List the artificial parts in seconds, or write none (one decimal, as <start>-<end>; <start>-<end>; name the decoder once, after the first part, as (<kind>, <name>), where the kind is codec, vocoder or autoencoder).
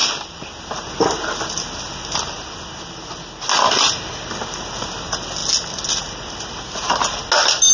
none